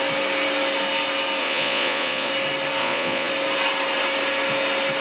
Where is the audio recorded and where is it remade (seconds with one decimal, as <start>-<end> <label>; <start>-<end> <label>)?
0.0-1.4 recorded; 1.4-2.3 remade; 2.3-2.8 recorded; 2.8-3.3 remade; 3.3-5.0 recorded